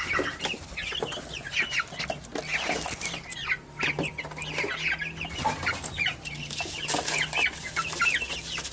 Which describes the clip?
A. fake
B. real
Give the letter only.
B